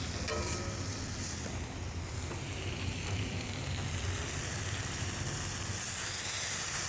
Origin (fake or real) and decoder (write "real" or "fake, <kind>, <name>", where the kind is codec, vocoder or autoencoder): real